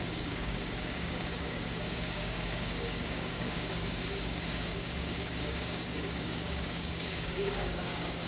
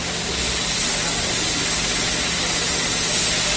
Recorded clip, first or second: second